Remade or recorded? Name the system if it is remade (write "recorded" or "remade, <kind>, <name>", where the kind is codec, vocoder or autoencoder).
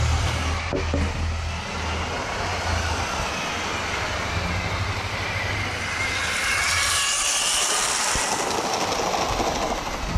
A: recorded